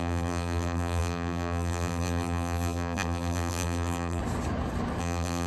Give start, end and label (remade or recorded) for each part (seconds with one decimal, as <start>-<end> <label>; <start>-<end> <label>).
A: 0.0-4.2 remade; 4.2-5.0 recorded; 5.0-5.5 remade